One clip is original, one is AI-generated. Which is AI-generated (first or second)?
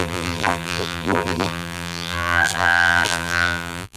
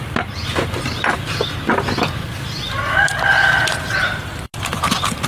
first